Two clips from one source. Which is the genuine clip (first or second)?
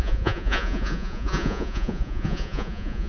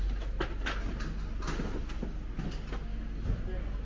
second